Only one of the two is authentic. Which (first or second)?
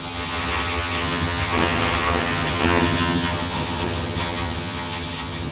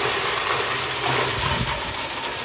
second